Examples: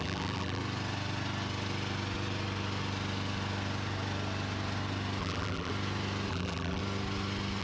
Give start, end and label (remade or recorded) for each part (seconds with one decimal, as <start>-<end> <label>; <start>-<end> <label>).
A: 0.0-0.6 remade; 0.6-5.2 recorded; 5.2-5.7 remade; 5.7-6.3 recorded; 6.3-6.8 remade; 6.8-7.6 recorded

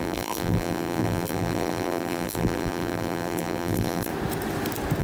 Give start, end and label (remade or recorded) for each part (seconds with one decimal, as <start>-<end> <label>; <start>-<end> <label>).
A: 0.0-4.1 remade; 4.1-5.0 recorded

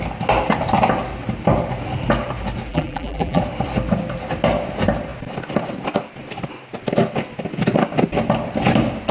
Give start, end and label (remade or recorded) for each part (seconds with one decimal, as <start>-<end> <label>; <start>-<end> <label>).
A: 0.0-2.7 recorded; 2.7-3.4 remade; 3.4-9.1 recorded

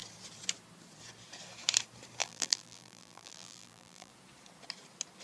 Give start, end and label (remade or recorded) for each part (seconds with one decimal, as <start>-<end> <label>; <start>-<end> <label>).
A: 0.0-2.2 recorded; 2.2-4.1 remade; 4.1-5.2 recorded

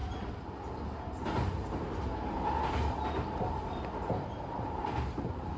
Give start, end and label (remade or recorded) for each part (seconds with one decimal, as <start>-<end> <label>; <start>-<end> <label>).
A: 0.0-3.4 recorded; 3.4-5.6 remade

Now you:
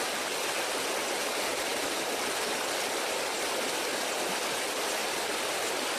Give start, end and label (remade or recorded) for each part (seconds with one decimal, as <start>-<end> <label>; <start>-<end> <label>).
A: 0.0-1.7 recorded; 1.7-3.8 remade; 3.8-6.0 recorded

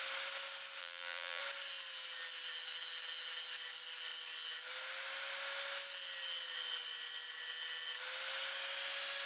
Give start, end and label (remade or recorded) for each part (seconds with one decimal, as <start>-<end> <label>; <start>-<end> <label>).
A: 0.0-0.8 recorded; 0.8-1.4 remade; 1.4-9.3 recorded